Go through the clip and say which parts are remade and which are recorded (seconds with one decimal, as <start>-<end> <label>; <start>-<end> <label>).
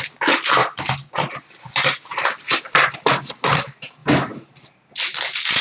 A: 0.0-5.6 recorded